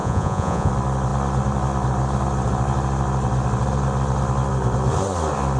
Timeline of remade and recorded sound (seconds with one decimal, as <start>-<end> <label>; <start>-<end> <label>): 0.0-0.7 remade; 0.7-5.6 recorded